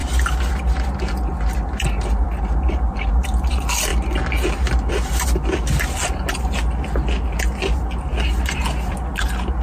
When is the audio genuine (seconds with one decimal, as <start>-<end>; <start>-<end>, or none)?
0.0-9.6